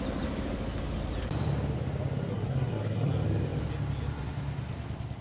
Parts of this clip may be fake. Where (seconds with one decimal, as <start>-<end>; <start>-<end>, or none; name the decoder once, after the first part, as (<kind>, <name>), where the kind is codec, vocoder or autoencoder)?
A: 2.3-3.1 (codec, SNAC)